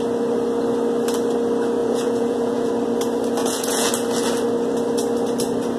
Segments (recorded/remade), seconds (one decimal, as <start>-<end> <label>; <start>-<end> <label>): 0.0-1.8 recorded; 1.8-2.7 remade; 2.7-3.4 recorded; 3.4-3.9 remade; 3.9-5.8 recorded